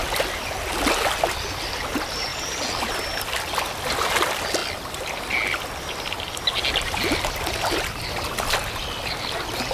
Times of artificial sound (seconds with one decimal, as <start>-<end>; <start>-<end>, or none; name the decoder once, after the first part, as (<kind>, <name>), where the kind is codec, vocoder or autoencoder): none